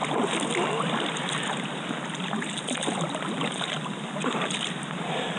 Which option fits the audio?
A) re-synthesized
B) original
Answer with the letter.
B